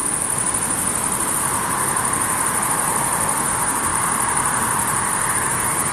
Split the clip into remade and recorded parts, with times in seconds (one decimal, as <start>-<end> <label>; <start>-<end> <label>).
0.0-3.5 recorded; 3.5-3.9 remade; 3.9-5.3 recorded; 5.3-5.9 remade